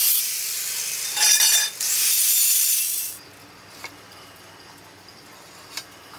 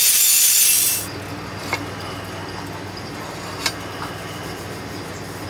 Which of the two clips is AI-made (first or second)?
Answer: first